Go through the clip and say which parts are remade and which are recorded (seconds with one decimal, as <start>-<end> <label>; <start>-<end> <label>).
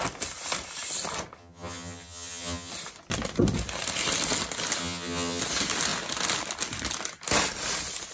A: 0.0-1.4 recorded; 1.4-2.7 remade; 2.7-4.8 recorded; 4.8-5.4 remade; 5.4-8.1 recorded